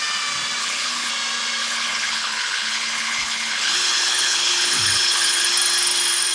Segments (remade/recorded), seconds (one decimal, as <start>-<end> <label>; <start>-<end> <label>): 0.0-0.6 recorded; 0.6-1.1 remade; 1.1-1.6 recorded; 1.6-5.4 remade; 5.4-6.3 recorded